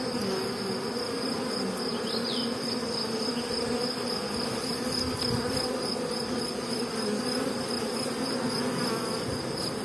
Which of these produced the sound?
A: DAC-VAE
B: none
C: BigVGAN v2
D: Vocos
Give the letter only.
B